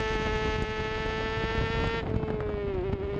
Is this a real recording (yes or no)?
yes